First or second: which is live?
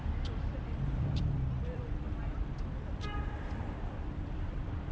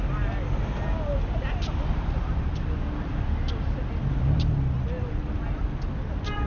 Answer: second